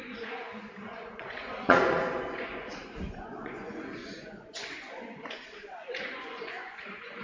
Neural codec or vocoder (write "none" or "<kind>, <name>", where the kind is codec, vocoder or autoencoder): vocoder, Vocos